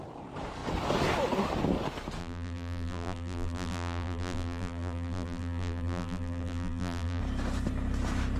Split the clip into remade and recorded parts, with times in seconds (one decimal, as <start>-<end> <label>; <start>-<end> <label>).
0.0-2.2 recorded; 2.2-7.2 remade; 7.2-8.4 recorded